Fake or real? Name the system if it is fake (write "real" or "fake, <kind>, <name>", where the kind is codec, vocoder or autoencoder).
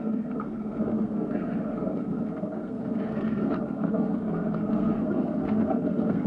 fake, codec, SNAC